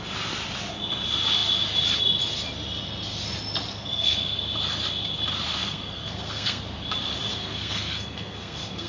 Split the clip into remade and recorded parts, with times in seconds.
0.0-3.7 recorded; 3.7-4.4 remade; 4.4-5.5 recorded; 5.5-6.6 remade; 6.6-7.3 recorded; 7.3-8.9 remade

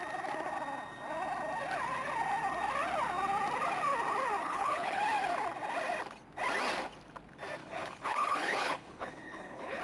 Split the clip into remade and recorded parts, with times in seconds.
0.0-4.4 recorded; 4.4-5.0 remade; 5.0-7.6 recorded; 7.6-9.8 remade

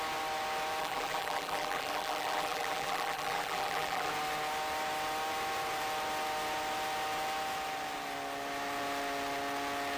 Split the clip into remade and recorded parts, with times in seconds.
0.0-0.8 recorded; 0.8-4.1 remade; 4.1-10.0 recorded

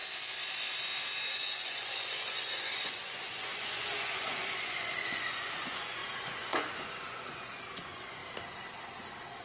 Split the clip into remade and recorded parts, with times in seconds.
0.0-1.3 recorded; 1.3-8.2 remade; 8.2-9.4 recorded